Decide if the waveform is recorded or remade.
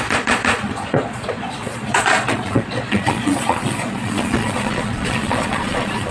remade